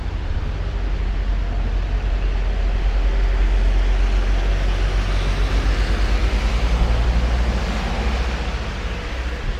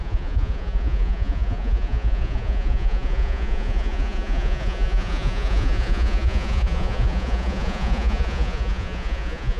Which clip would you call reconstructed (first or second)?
second